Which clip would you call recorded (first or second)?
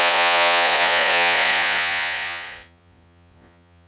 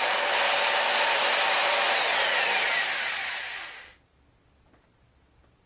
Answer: second